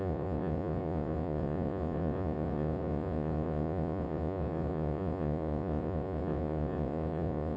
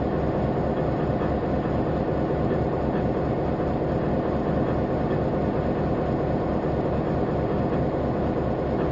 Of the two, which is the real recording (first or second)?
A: second